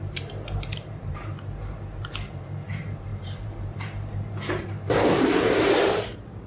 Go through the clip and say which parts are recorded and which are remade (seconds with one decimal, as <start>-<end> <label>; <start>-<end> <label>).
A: 0.0-6.5 remade